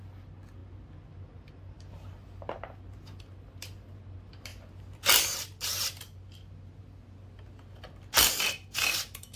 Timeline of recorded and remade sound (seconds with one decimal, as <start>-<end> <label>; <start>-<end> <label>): 0.0-9.4 recorded